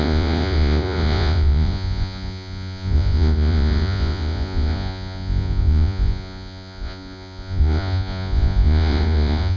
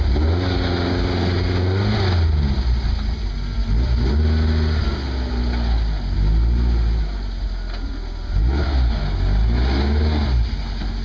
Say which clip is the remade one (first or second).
first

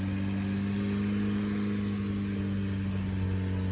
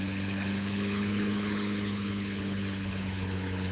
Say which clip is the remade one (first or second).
second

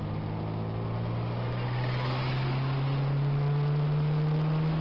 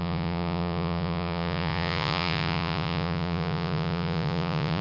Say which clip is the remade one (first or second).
second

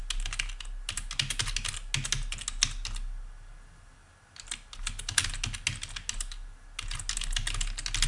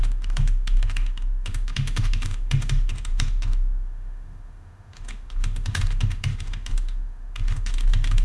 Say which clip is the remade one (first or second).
second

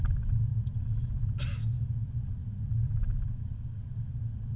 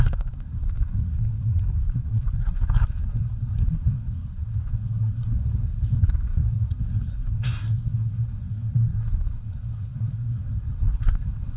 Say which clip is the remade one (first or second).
second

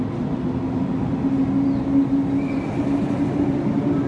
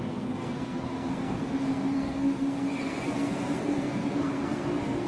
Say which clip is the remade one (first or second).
second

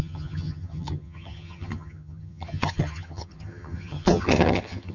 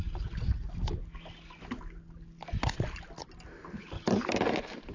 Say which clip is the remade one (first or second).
first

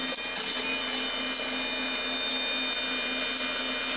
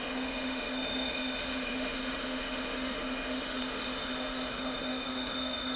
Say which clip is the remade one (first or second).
second